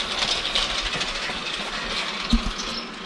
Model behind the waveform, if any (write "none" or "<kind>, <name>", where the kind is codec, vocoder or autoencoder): none